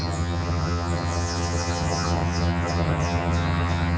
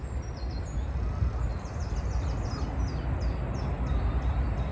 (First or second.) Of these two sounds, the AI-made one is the first